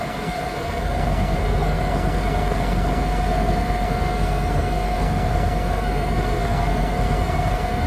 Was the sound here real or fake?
fake